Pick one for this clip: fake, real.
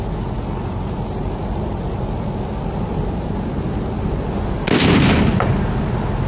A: real